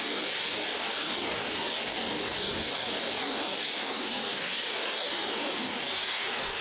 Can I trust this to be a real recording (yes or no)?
no